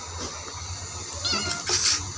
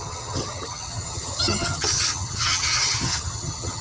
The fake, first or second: second